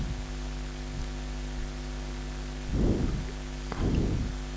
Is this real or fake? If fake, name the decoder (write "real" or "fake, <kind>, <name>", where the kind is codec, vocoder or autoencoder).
real